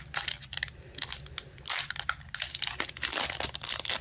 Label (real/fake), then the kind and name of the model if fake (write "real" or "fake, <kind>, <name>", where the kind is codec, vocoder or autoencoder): real